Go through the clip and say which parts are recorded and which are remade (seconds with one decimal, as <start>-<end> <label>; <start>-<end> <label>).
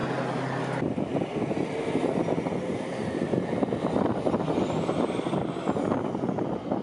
0.0-6.8 recorded